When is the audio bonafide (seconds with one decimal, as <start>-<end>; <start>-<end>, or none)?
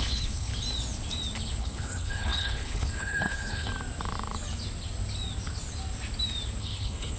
0.5-1.6; 3.7-6.6